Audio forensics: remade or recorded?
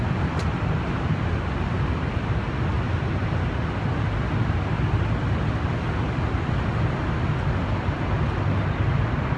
recorded